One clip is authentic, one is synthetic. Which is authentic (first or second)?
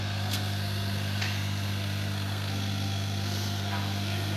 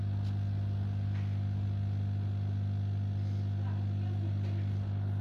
second